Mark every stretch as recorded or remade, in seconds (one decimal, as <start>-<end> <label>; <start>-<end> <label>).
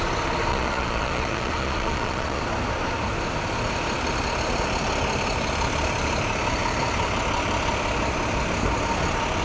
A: 0.0-0.5 recorded; 0.5-2.4 remade; 2.4-9.4 recorded